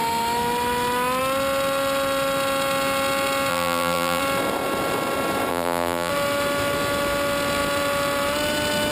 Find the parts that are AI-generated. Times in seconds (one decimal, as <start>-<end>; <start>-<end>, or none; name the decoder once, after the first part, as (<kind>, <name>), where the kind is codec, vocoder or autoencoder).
3.5-4.2 (vocoder, BigVGAN v2); 5.5-6.1